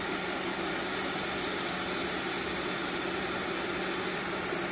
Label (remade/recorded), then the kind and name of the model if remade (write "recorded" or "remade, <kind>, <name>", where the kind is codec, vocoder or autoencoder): recorded